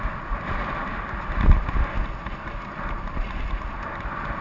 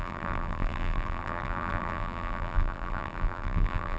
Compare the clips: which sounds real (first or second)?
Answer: first